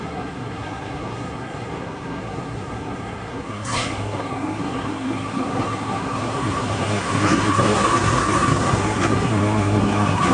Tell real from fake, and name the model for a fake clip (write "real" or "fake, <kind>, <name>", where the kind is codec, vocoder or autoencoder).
fake, codec, SNAC